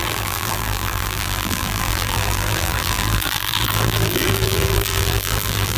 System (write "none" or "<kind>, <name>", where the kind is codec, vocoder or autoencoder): vocoder, BigVGAN v2